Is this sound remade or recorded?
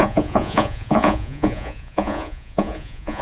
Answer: remade